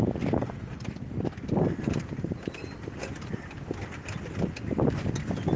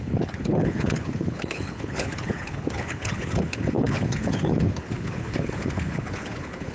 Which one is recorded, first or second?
first